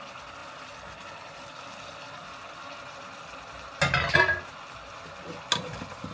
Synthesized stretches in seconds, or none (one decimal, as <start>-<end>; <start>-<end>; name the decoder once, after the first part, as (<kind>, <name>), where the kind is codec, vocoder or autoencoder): none